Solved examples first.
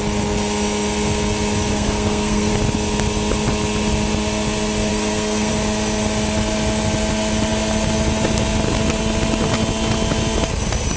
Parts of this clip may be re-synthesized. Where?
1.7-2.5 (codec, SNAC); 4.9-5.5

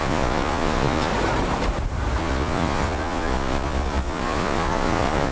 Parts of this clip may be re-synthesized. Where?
0.0-1.1 (vocoder, Vocos); 2.2-5.3